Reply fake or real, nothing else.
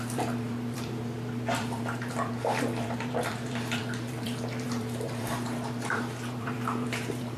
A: fake